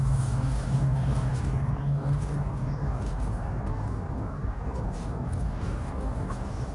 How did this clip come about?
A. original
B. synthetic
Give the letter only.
B